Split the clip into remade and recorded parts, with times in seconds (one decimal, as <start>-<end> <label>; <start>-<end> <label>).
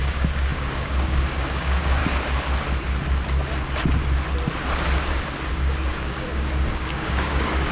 0.0-2.0 remade; 2.0-5.5 recorded; 5.5-7.7 remade